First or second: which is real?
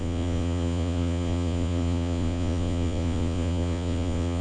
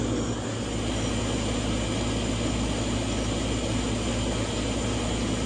second